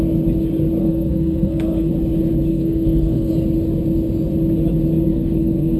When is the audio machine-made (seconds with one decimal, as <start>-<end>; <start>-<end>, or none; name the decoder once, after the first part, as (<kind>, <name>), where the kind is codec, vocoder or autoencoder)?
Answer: 0.8-1.9 (codec, SNAC); 2.5-3.3; 5.1-5.8